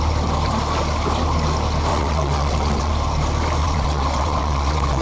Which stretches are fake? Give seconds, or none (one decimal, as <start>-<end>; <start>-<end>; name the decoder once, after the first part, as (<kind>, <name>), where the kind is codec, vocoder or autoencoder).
1.9-2.9 (vocoder, WaveNeXt); 3.6-5.0